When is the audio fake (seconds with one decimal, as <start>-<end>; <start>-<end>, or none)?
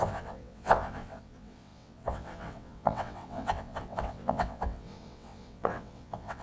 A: 0.0-6.4